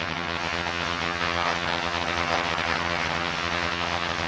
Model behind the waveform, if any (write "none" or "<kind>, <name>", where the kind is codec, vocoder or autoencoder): vocoder, HiFi-GAN